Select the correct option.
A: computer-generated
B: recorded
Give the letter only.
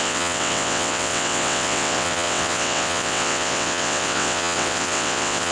A